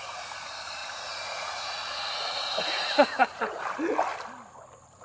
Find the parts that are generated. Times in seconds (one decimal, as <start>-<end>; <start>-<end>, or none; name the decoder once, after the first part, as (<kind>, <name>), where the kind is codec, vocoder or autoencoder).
0.8-3.6 (vocoder, Vocos)

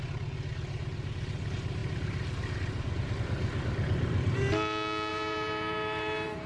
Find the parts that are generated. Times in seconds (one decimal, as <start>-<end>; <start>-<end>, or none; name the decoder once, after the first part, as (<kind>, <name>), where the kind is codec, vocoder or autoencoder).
5.1-6.5 (vocoder, BigVGAN v2)

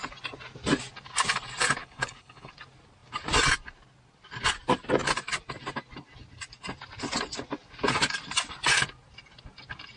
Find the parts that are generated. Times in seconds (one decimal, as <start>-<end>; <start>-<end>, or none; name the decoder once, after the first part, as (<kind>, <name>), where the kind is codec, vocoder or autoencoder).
1.8-2.5 (codec, HILCodec)